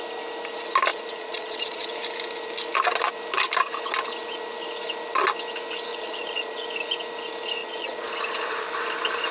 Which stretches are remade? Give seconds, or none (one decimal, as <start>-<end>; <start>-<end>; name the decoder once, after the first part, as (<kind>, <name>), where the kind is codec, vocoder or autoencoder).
0.9-1.9 (vocoder, Vocos); 5.9-6.6; 7.6-8.1